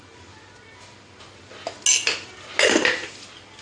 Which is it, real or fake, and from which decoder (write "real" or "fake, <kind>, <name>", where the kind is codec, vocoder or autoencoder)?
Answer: real